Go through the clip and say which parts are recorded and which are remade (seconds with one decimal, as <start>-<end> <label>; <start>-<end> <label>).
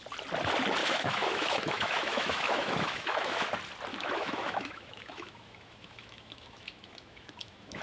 0.0-0.8 recorded; 0.8-3.5 remade; 3.5-3.9 recorded; 3.9-7.8 remade